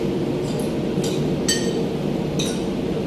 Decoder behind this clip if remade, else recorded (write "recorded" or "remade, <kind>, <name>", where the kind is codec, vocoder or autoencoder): recorded